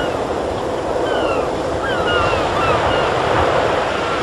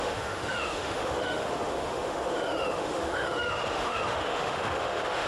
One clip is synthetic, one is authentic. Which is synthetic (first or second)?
second